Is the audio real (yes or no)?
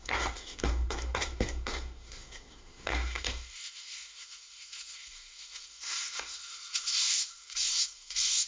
no